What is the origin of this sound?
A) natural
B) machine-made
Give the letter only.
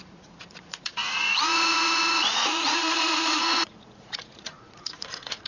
B